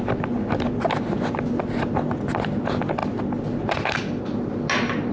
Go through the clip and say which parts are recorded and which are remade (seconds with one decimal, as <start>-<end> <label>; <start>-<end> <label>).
0.0-5.1 recorded